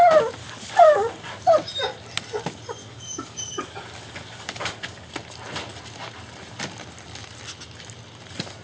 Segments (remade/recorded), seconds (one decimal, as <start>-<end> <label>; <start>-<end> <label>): 0.0-0.4 recorded; 0.4-1.4 remade; 1.4-2.8 recorded; 2.8-5.1 remade; 5.1-8.6 recorded